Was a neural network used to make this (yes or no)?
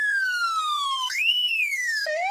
yes